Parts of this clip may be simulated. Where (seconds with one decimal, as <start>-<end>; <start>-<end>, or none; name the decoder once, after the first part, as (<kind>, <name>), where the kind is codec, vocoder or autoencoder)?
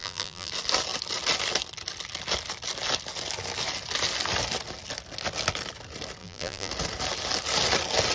0.0-0.5 (vocoder, BigVGAN v2); 6.2-6.7